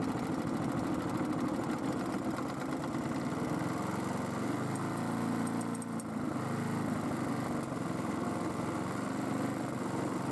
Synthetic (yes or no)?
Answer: no